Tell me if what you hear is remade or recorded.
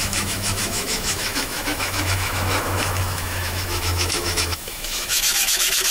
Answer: remade